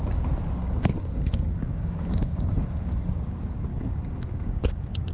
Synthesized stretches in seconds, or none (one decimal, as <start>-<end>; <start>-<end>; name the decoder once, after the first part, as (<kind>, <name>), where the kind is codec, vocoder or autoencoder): 0.6-3.1 (codec, DAC); 3.7-5.1